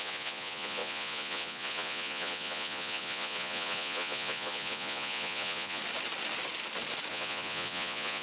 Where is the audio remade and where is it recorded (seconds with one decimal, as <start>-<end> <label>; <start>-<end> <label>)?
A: 0.0-5.8 remade; 5.8-7.1 recorded; 7.1-8.2 remade